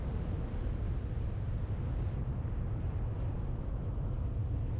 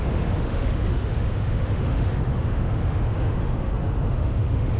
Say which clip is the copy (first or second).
second